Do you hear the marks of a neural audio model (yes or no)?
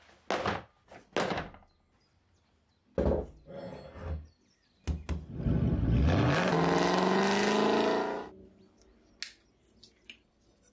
no